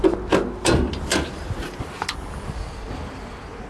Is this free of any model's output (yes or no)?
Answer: yes